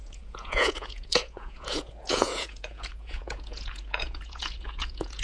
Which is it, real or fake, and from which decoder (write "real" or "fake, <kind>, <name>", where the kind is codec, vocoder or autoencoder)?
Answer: fake, vocoder, Vocos